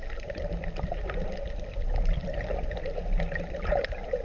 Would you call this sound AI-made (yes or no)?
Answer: yes